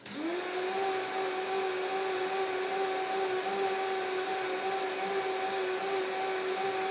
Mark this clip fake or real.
real